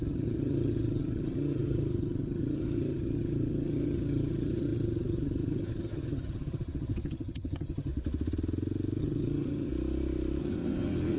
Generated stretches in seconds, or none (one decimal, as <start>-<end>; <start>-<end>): 0.0-7.9; 9.0-9.7; 10.4-11.2